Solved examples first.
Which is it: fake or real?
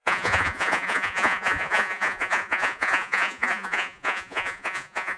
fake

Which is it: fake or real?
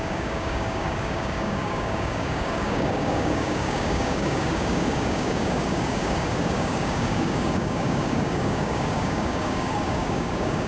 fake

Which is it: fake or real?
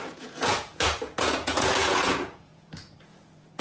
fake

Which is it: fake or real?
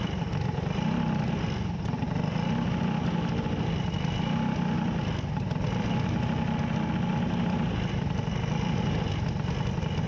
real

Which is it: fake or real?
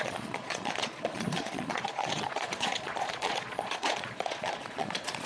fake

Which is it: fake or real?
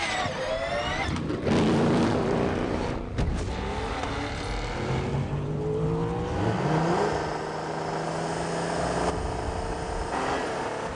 real